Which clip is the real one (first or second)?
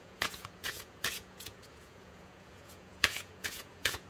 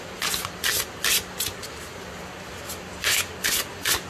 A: second